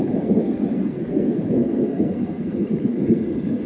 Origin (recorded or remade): remade